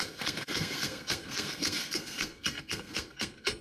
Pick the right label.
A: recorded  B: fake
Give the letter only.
B